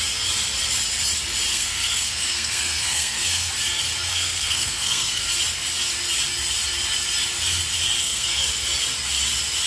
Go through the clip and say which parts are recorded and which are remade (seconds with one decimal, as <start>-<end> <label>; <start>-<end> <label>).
0.0-1.5 recorded; 1.5-3.5 remade; 3.5-4.1 recorded; 4.1-5.3 remade; 5.3-8.0 recorded; 8.0-8.5 remade; 8.5-9.7 recorded